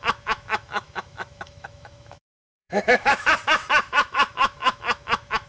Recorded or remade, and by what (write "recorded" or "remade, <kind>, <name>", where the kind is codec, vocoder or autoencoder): remade, autoencoder, DAC-VAE